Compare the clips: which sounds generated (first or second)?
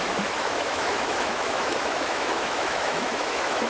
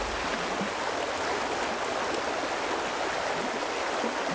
first